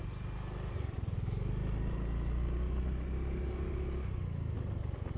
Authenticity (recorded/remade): recorded